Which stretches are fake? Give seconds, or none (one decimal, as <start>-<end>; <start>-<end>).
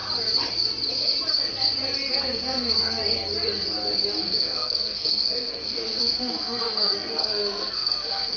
2.1-3.0; 4.2-8.4